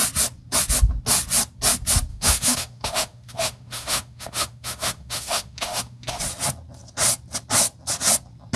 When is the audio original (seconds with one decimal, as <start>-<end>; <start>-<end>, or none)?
0.0-2.1; 6.2-8.6